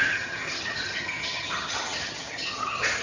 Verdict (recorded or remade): remade